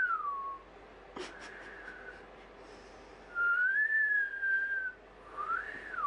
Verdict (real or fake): fake